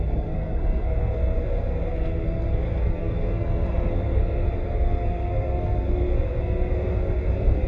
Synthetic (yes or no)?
yes